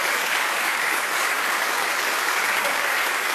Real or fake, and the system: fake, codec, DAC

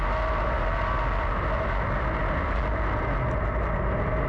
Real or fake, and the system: real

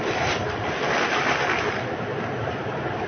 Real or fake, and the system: real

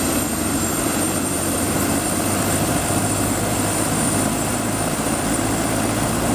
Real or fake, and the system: fake, vocoder, BigVGAN v2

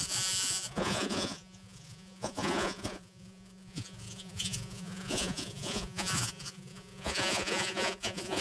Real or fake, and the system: fake, vocoder, Vocos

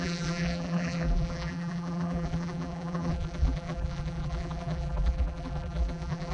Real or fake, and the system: fake, vocoder, BigVGAN v2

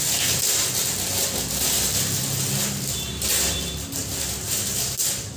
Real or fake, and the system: real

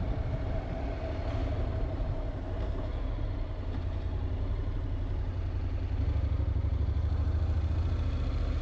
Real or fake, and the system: real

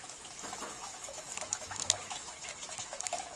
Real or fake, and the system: fake, autoencoder, DAC-VAE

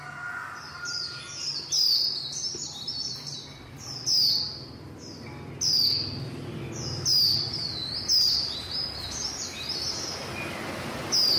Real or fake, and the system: real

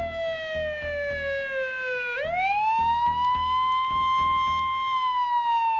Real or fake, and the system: real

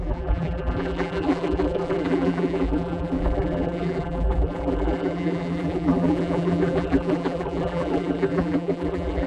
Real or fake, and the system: fake, vocoder, BigVGAN v2